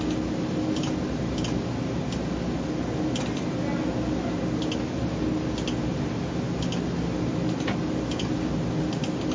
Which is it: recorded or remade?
recorded